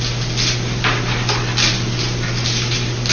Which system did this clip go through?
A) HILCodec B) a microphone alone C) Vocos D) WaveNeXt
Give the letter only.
B